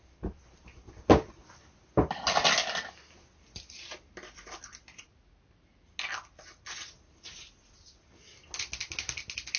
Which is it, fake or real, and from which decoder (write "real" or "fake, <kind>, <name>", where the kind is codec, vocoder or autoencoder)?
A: real